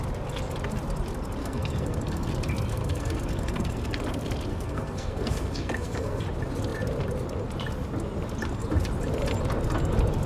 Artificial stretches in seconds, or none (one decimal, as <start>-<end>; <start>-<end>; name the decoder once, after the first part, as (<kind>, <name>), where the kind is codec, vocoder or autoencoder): 1.4-2.3 (codec, SNAC); 2.7-4.0; 4.5-6.2